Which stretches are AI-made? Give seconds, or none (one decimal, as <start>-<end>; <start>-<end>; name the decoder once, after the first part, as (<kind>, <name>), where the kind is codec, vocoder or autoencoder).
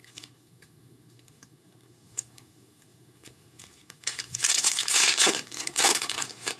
0.0-6.6 (codec, SNAC)